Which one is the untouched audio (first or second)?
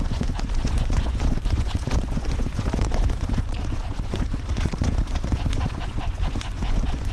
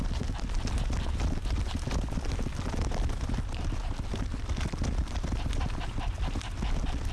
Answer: second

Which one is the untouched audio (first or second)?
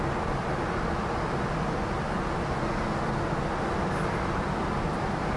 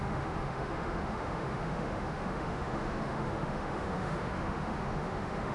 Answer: first